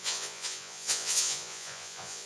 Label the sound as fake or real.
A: fake